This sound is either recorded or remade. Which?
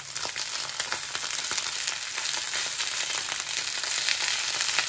recorded